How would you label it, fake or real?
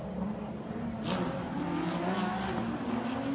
real